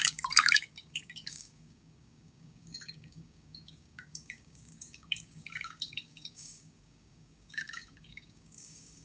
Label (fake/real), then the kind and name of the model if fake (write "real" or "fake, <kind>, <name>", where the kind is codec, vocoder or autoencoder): fake, codec, DAC